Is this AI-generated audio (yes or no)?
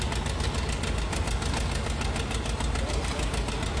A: no